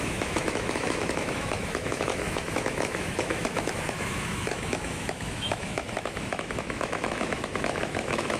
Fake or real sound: fake